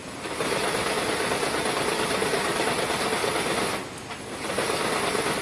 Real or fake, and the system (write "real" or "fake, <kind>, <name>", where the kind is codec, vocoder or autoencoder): real